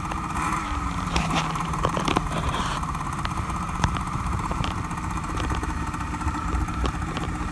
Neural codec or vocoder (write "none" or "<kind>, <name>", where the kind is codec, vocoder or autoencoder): vocoder, BigVGAN v2